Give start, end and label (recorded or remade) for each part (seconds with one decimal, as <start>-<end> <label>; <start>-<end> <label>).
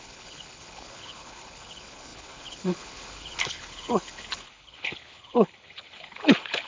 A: 0.0-6.7 remade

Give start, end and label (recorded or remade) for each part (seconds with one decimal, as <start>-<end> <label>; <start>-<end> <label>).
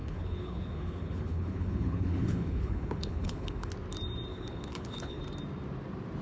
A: 0.0-3.7 remade; 3.7-4.3 recorded; 4.3-5.2 remade; 5.2-6.2 recorded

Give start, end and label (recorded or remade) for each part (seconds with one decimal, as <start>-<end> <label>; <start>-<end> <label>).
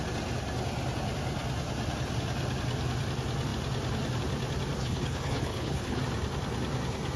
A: 0.0-4.8 recorded; 4.8-6.0 remade; 6.0-7.2 recorded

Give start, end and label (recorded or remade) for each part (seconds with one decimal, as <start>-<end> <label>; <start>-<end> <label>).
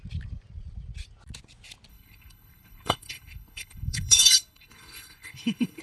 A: 0.0-1.9 recorded; 1.9-5.8 remade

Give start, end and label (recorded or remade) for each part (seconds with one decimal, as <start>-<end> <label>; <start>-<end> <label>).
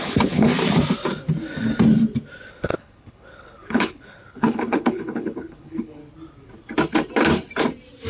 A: 0.0-0.5 remade; 0.5-2.5 recorded; 2.5-6.0 remade; 6.0-8.1 recorded